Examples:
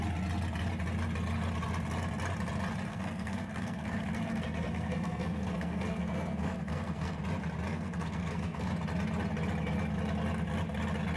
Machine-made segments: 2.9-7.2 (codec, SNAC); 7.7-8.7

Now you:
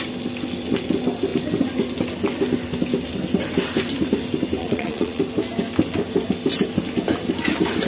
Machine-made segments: 4.6-5.2 (vocoder, Vocos)

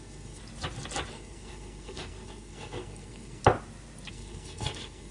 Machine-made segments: 0.0-0.4 (codec, SNAC); 1.1-3.4; 4.1-5.1

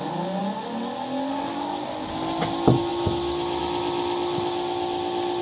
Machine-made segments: 2.9-3.6 (vocoder, BigVGAN v2)

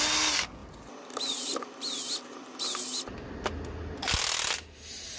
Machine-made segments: none

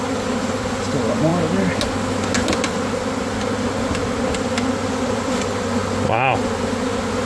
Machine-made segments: 0.0-1.3 (vocoder, BigVGAN v2); 4.9-5.8